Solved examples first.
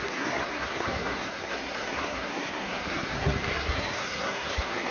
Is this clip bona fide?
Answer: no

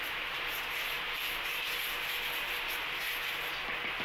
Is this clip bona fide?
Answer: yes